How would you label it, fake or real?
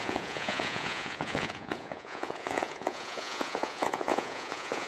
fake